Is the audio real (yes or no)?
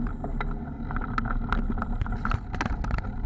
yes